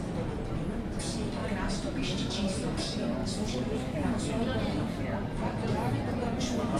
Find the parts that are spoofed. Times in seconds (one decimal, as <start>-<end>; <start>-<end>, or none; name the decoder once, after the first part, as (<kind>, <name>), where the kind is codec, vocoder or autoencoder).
3.2-4.2 (codec, DAC)